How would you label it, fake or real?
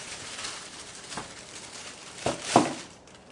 fake